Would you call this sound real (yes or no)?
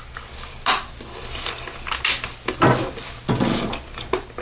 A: yes